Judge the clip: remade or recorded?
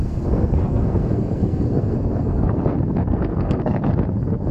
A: remade